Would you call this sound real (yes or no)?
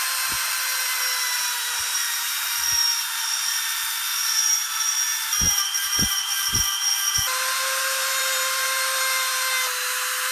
no